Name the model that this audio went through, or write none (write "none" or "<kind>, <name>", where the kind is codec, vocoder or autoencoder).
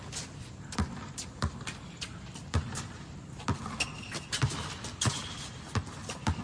none